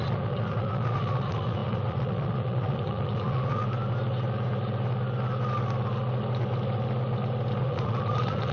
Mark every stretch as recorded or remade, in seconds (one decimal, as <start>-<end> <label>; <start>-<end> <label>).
0.0-3.6 remade; 3.6-7.6 recorded; 7.6-8.5 remade